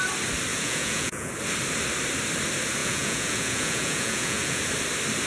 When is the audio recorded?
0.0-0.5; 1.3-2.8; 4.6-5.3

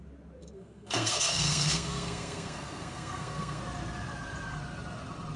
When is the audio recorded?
0.0-0.4; 3.6-5.4